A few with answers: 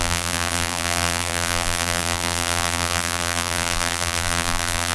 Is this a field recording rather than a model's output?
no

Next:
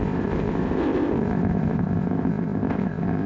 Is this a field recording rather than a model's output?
no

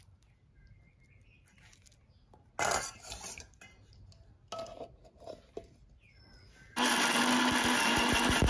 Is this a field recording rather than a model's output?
yes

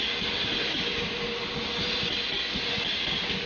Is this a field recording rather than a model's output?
yes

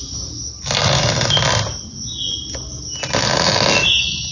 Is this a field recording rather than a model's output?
yes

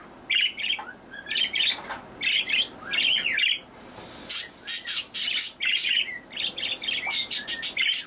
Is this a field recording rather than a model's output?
yes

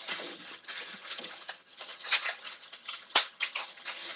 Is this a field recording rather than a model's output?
no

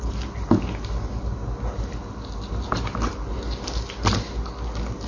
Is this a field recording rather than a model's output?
yes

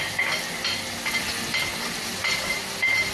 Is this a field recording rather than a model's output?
yes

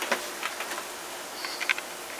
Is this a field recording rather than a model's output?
yes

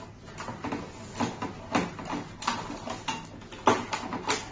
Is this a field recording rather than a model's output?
yes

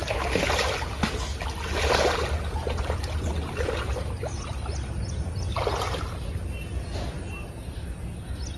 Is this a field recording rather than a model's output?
yes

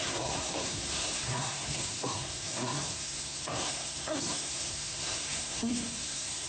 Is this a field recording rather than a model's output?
no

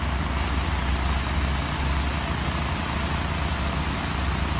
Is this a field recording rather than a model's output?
yes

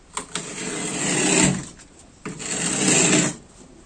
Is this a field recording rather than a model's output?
yes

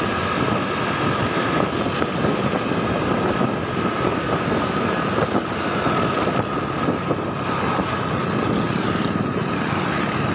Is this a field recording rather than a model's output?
yes